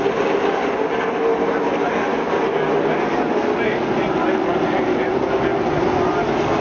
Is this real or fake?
real